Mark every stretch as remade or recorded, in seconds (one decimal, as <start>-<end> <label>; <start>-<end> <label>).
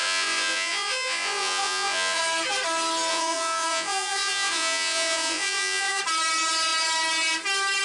0.0-2.2 remade; 2.2-3.1 recorded; 3.1-6.0 remade; 6.0-7.8 recorded